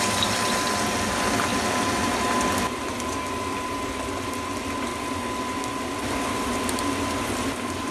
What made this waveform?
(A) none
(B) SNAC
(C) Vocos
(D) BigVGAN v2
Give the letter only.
A